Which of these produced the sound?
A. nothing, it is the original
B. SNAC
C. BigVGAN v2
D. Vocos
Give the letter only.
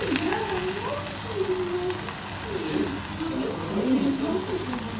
A